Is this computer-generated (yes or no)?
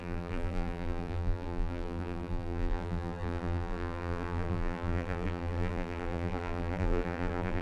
yes